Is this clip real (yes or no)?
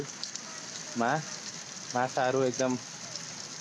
yes